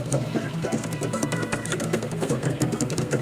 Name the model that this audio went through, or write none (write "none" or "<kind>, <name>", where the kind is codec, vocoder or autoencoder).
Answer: codec, SNAC